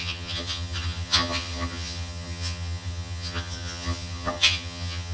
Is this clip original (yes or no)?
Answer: no